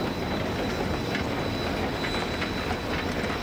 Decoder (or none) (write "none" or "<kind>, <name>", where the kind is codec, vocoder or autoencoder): none